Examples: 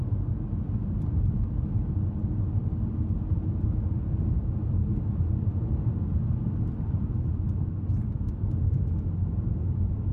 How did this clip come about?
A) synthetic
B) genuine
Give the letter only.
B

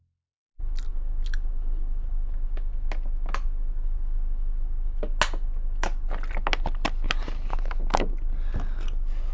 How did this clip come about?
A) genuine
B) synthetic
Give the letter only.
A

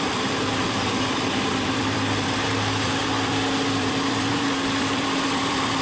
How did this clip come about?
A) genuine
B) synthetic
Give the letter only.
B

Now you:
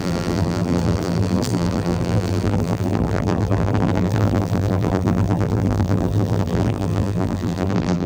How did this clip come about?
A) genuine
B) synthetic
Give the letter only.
B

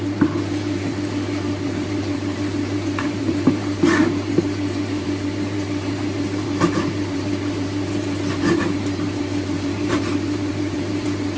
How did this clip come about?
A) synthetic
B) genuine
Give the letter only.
A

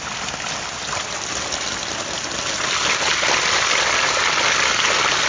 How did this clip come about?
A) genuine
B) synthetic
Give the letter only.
A